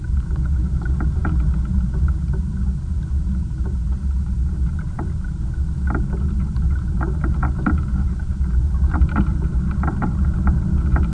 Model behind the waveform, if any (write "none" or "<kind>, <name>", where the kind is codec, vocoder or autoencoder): none